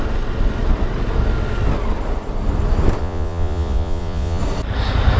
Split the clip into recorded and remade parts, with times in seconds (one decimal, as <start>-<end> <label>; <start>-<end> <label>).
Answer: 0.0-3.0 recorded; 3.0-4.4 remade; 4.4-5.2 recorded